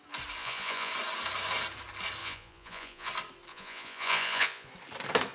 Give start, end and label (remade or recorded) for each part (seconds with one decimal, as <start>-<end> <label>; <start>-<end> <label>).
0.0-0.4 recorded; 0.4-0.9 remade; 0.9-2.2 recorded; 2.2-3.1 remade; 3.1-3.5 recorded; 3.5-4.7 remade; 4.7-5.3 recorded